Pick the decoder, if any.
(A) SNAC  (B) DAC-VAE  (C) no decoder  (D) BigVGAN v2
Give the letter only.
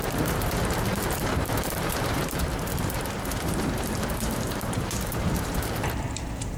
D